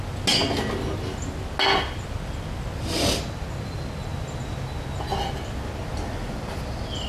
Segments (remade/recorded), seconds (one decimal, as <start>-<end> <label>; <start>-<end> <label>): 0.0-7.1 recorded